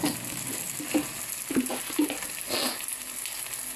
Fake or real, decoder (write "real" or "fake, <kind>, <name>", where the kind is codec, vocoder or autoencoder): real